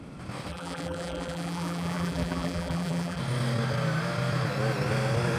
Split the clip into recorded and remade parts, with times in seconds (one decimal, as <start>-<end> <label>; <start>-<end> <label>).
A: 0.0-0.5 recorded; 0.5-3.2 remade; 3.2-5.4 recorded